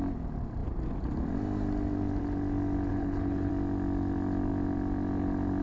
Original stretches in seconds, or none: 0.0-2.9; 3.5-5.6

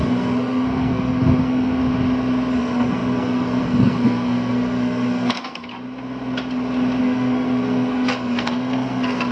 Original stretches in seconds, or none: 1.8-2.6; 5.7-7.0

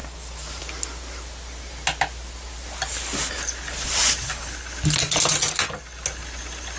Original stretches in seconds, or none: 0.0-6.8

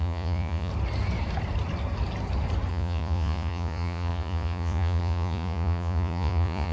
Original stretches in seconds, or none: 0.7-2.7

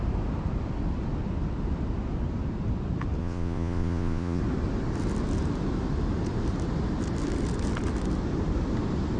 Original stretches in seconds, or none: 0.0-3.2; 4.4-9.2

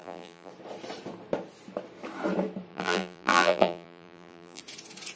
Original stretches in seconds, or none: 0.5-2.7; 4.6-5.2

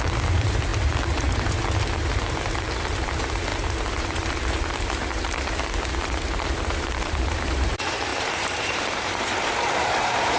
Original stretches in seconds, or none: none

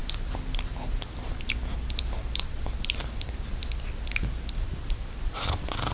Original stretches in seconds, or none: 0.0-5.9